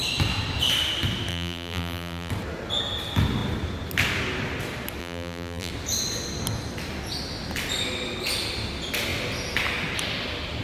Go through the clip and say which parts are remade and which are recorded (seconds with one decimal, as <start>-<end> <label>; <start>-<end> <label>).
0.0-1.3 recorded; 1.3-2.3 remade; 2.3-5.0 recorded; 5.0-5.7 remade; 5.7-10.6 recorded